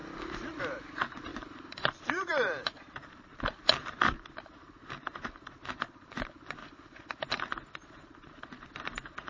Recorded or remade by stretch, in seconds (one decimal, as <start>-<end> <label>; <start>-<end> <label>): 0.0-0.6 recorded; 0.6-6.6 remade; 6.6-7.5 recorded; 7.5-9.3 remade